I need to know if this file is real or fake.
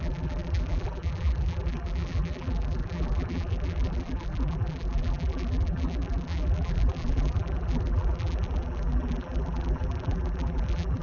fake